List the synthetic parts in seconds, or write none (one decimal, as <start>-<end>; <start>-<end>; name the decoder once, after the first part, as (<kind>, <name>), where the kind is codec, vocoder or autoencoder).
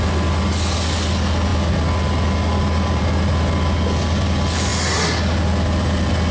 none